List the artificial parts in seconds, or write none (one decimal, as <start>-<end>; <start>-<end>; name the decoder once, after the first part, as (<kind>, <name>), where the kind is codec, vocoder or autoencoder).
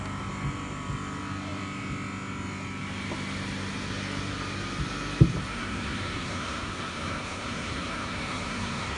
5.5-9.0 (codec, SNAC)